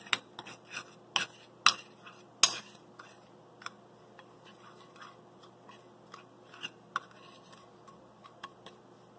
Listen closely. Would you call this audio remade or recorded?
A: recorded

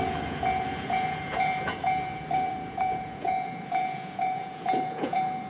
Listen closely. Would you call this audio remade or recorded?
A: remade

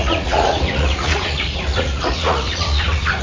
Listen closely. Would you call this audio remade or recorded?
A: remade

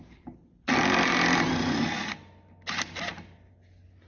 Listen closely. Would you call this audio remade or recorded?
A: recorded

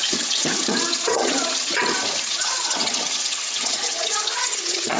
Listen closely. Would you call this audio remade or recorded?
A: remade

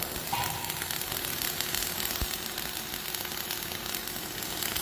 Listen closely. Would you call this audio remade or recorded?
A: recorded